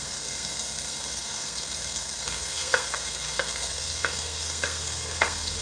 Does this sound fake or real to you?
fake